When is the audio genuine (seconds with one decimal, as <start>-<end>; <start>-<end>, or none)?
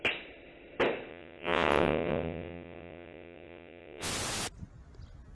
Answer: 0.0-1.1; 4.1-5.3